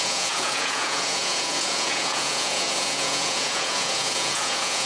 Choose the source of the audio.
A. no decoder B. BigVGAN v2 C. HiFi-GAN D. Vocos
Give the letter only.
D